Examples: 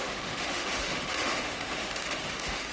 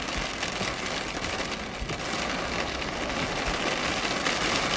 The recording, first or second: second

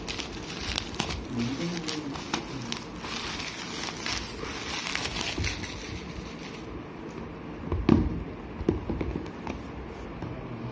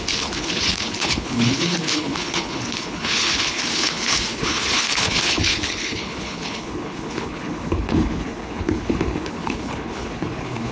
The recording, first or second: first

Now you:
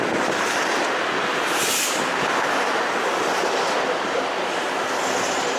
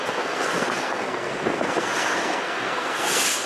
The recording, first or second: first